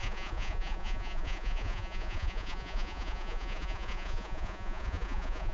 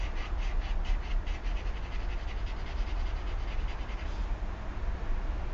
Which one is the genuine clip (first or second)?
second